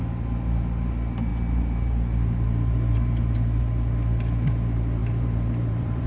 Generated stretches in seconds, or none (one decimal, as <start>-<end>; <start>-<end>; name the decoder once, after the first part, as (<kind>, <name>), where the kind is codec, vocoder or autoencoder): 1.3-3.6 (vocoder, BigVGAN v2); 5.0-6.1